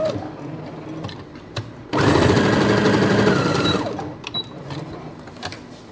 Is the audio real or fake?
real